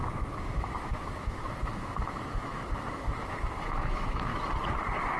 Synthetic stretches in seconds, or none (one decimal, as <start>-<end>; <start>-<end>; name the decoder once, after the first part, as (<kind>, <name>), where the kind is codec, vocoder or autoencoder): 0.0-4.3 (autoencoder, DAC-VAE)